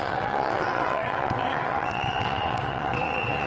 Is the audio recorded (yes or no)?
no